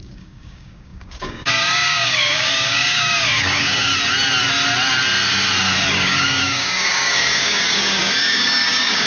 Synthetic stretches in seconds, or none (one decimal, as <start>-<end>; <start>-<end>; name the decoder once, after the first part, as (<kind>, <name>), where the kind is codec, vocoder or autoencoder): 0.0-3.9 (codec, DAC); 5.9-9.1